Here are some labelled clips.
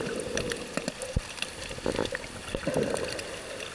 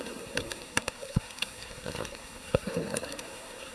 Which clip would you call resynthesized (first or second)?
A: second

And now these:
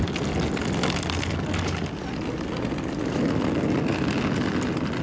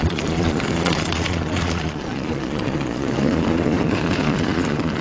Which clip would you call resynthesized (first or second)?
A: second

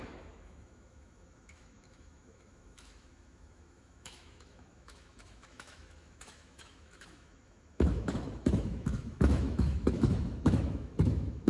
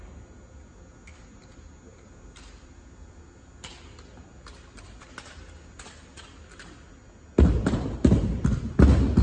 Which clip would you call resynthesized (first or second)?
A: first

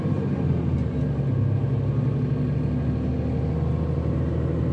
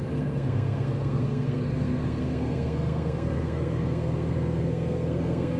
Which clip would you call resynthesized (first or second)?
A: second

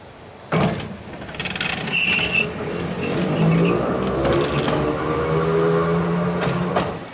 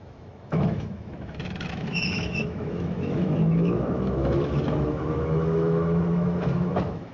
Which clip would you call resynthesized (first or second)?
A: second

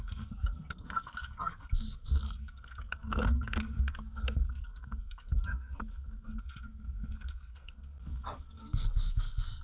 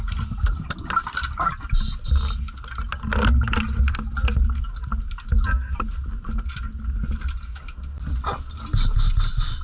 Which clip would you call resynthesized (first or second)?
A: first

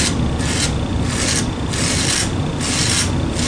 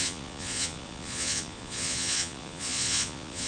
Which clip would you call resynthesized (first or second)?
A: second